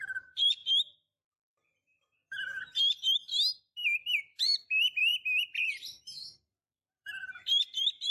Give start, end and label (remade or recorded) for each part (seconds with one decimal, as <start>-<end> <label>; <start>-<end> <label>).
0.0-0.6 remade; 0.6-4.2 recorded; 4.2-5.1 remade; 5.1-5.7 recorded; 5.7-8.1 remade